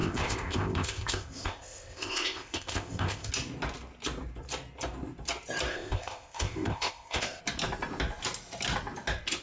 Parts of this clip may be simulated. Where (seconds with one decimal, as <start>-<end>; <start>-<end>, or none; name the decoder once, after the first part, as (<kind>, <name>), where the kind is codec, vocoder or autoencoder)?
0.0-3.3 (codec, ZipCodec); 5.7-7.4